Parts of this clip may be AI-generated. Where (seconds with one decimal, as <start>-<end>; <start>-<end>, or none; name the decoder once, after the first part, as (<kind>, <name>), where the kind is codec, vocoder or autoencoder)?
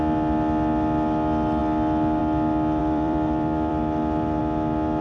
2.8-4.4 (vocoder, BigVGAN v2)